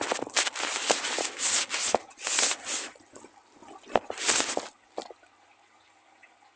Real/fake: real